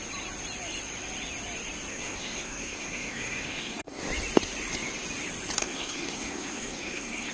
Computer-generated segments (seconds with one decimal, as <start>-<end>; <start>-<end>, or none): 1.9-4.0; 5.6-7.3